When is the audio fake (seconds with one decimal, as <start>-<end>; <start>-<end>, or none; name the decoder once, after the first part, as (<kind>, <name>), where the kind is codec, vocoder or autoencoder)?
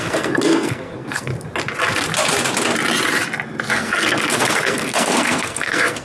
0.0-1.3 (codec, SNAC); 3.7-6.0